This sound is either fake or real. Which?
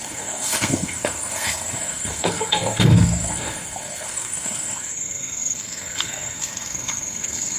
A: fake